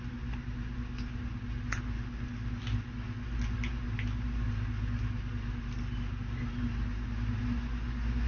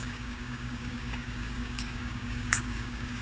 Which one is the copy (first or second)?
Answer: second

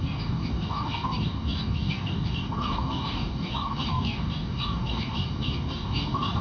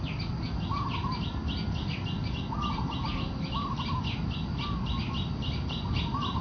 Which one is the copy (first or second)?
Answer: first